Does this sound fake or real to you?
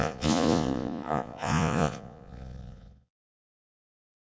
fake